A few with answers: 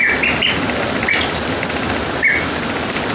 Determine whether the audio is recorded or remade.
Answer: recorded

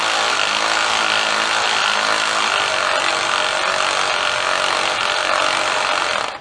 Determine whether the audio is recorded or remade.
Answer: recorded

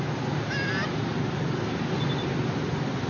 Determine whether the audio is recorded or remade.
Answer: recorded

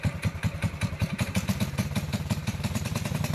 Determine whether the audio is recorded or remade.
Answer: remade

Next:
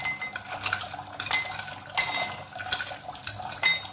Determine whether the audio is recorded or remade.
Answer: recorded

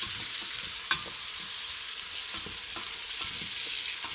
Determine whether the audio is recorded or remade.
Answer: recorded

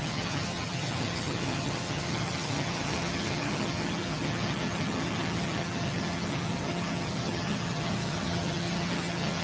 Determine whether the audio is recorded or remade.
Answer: remade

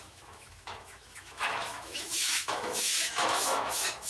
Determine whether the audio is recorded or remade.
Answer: remade